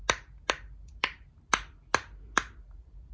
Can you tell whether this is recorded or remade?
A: recorded